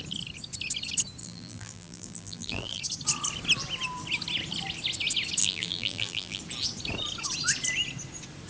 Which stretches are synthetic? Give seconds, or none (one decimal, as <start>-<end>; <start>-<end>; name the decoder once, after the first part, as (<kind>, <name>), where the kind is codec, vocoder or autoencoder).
1.2-2.8 (vocoder, BigVGAN v2); 5.4-6.4

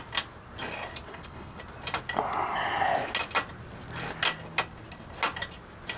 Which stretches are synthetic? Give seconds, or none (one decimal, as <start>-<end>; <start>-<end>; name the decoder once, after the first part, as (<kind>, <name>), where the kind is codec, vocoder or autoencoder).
1.1-1.6 (codec, HILCodec)